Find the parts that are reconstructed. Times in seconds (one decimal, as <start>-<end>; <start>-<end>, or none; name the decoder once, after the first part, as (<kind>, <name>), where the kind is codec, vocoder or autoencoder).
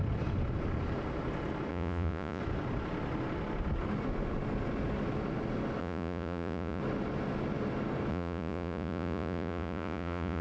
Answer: 1.7-2.4 (vocoder, Vocos); 5.8-6.8; 8.1-10.4